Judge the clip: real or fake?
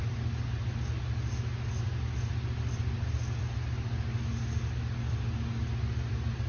real